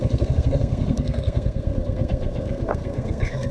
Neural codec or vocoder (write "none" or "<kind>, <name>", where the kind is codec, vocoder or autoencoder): codec, SNAC